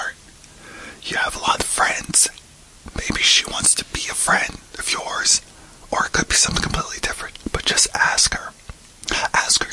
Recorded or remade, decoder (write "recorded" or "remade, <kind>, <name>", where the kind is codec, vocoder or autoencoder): recorded